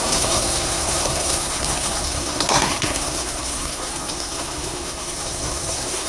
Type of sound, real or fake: fake